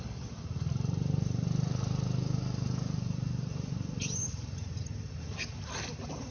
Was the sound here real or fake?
real